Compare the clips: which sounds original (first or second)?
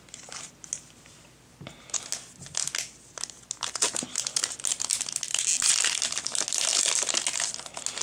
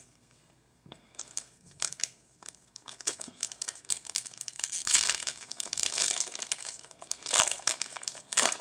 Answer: first